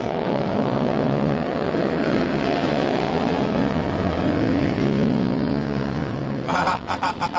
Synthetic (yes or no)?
yes